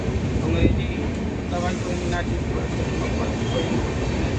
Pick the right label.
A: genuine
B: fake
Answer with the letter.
A